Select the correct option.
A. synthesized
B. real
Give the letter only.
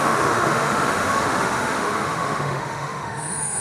A